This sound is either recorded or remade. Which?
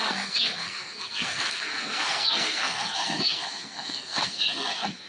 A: remade